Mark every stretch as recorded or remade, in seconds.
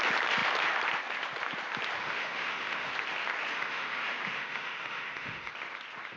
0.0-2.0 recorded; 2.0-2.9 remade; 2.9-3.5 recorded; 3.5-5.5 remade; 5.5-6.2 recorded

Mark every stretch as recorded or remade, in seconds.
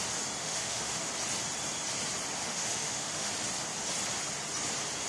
0.0-0.4 recorded; 0.4-1.1 remade; 1.1-2.4 recorded; 2.4-3.3 remade; 3.3-5.1 recorded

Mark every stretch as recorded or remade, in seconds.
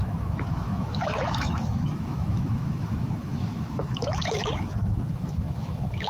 0.0-6.1 remade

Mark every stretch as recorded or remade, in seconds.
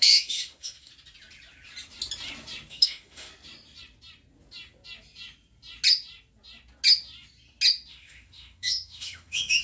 0.0-0.9 remade; 0.9-2.7 recorded; 2.7-3.3 remade; 3.3-7.9 recorded; 7.9-9.6 remade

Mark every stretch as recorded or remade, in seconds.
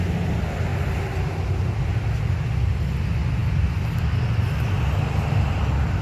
0.0-6.0 recorded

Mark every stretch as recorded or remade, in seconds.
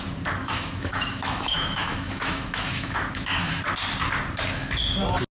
0.0-0.4 recorded; 0.4-3.6 remade; 3.6-5.3 recorded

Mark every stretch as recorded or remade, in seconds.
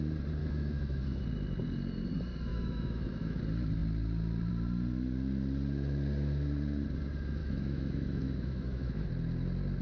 0.0-0.4 recorded; 0.4-1.2 remade; 1.2-2.5 recorded; 2.5-3.4 remade; 3.4-7.4 recorded; 7.4-9.1 remade; 9.1-9.8 recorded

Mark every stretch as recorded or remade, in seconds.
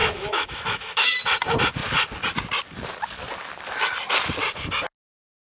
0.0-1.2 remade; 1.2-5.4 recorded